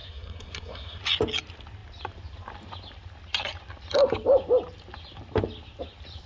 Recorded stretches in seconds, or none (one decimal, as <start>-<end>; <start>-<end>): 1.0-6.3